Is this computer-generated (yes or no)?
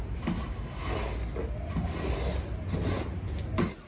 no